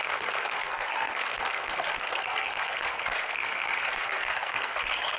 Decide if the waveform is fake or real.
fake